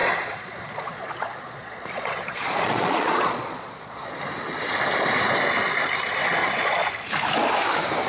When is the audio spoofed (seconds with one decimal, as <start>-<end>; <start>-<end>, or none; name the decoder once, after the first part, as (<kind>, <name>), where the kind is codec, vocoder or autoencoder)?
0.0-4.2 (vocoder, Vocos); 6.4-6.9